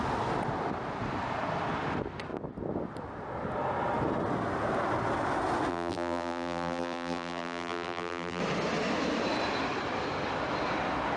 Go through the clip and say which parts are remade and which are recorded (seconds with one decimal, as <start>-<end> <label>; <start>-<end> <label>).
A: 0.0-5.7 recorded; 5.7-8.4 remade; 8.4-11.2 recorded